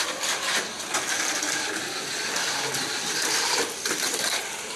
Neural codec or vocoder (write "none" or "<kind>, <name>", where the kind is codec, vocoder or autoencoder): none